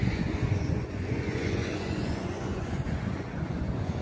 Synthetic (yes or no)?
yes